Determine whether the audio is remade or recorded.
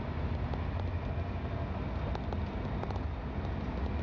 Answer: recorded